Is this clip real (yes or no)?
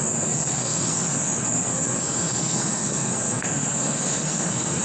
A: no